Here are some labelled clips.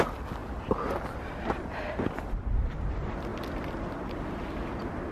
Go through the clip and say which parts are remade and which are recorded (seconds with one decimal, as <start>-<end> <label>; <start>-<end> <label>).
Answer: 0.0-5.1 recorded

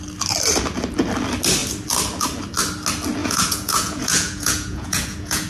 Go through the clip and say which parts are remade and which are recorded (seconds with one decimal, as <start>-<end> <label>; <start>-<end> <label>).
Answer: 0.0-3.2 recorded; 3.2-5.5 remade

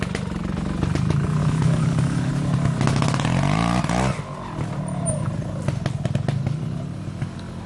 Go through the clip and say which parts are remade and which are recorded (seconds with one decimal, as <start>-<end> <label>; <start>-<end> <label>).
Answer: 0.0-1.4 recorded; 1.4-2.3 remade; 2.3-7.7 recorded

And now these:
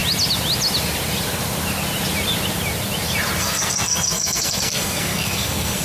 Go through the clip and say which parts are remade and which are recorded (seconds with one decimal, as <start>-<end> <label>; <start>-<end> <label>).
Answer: 0.0-3.4 recorded; 3.4-5.8 remade

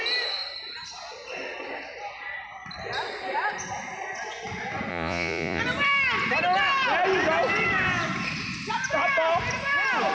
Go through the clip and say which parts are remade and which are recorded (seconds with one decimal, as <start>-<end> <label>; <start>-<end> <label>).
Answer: 0.0-4.9 recorded; 4.9-5.6 remade; 5.6-10.1 recorded

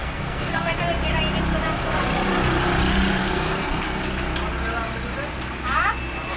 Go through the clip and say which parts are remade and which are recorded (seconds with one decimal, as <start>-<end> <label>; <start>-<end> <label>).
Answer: 0.0-0.7 remade; 0.7-3.2 recorded; 3.2-4.0 remade; 4.0-6.4 recorded

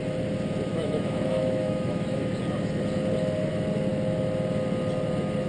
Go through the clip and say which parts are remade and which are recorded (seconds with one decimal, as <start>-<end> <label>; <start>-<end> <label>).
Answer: 0.0-0.7 recorded; 0.7-2.4 remade; 2.4-5.5 recorded

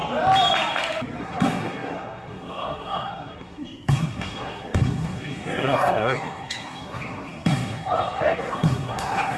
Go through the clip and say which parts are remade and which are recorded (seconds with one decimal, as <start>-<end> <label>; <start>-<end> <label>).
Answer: 0.0-1.2 recorded; 1.2-9.4 remade